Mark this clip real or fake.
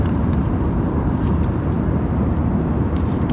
fake